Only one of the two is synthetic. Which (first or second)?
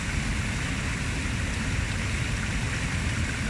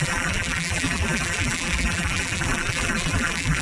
second